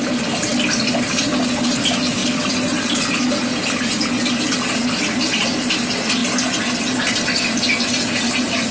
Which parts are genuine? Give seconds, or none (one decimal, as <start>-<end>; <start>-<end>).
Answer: 0.0-8.7